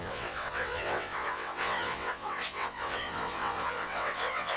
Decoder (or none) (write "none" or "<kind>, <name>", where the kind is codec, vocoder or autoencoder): vocoder, WaveNeXt